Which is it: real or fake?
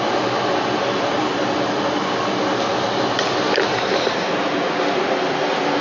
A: real